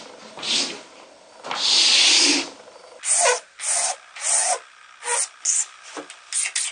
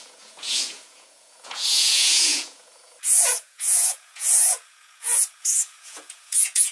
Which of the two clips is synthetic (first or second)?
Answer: second